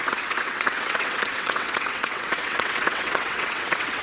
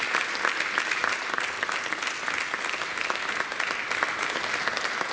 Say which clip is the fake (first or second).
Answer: first